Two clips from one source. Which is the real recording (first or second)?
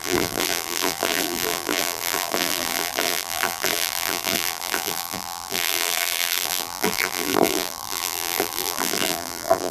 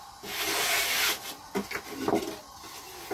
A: second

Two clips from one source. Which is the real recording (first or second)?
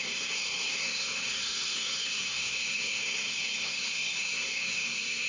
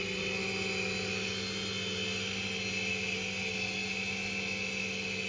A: second